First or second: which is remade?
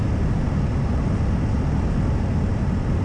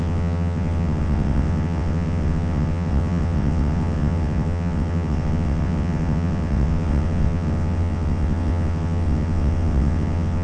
second